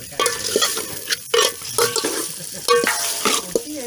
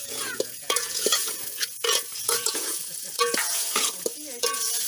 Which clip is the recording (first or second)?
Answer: first